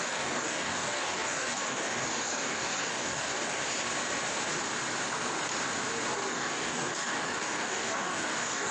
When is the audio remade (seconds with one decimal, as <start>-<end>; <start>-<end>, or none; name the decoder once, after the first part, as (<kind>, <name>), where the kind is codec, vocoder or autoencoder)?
0.0-3.6 (codec, DAC); 6.3-8.7